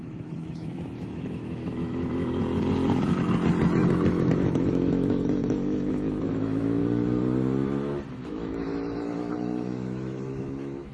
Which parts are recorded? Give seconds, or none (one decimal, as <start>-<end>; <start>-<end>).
2.4-3.9; 6.8-8.1